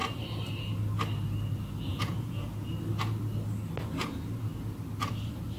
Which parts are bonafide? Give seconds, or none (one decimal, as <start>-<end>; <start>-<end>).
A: 0.0-1.9; 2.7-5.6